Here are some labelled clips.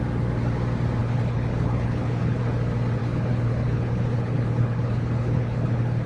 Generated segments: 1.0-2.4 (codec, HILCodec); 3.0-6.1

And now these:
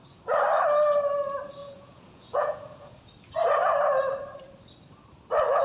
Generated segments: 1.6-3.1 (vocoder, Vocos)

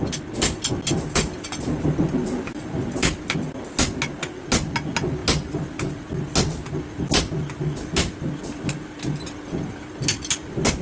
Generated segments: none